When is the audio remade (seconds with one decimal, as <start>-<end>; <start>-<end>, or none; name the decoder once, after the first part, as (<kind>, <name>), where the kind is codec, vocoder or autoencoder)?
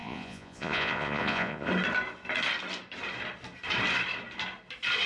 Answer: 0.0-1.7 (vocoder, Vocos)